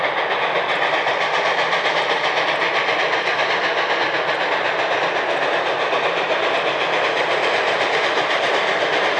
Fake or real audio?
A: real